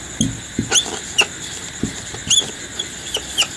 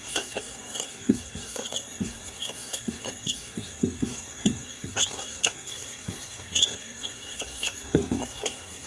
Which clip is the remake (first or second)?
second